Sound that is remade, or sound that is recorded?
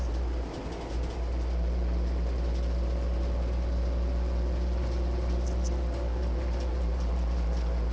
recorded